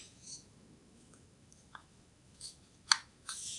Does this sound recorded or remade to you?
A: remade